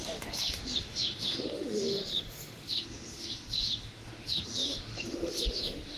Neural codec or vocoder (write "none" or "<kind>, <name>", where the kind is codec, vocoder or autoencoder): autoencoder, DAC-VAE